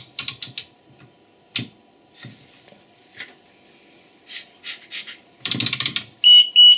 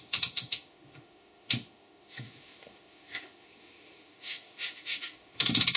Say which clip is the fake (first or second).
second